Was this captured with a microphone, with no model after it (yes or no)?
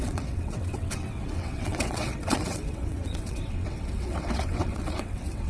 no